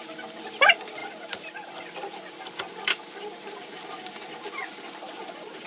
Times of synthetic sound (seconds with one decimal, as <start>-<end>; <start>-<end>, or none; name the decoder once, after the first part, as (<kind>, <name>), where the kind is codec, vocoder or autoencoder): 0.0-4.7 (vocoder, BigVGAN v2); 5.2-5.7